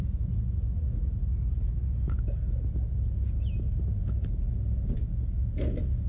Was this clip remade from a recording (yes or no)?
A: no